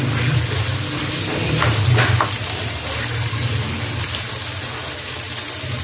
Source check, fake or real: real